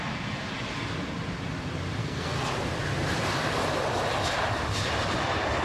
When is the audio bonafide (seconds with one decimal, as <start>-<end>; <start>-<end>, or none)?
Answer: 0.0-2.0; 2.5-5.6

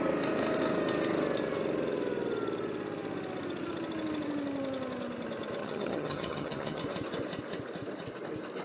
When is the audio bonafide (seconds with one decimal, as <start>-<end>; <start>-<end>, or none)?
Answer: 0.0-5.6; 6.8-8.6

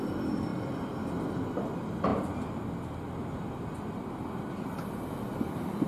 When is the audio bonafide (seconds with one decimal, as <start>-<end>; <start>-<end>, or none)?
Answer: 0.0-5.9

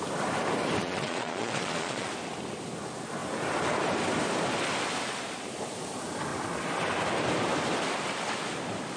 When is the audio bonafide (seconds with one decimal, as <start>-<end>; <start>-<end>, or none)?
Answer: 0.0-0.8; 2.1-9.0

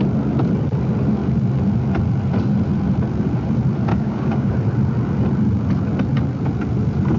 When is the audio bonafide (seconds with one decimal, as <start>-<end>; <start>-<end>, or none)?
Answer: 0.0-3.9; 4.5-7.2

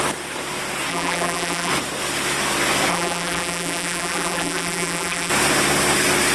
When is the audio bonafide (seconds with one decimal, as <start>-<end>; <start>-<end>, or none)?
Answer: 0.0-0.9; 1.7-2.9; 5.3-6.3